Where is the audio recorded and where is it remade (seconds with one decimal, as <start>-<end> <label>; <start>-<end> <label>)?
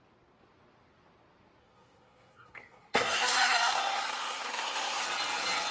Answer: 0.0-1.6 recorded; 1.6-5.0 remade; 5.0-5.7 recorded